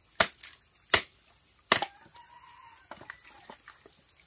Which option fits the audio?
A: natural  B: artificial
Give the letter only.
A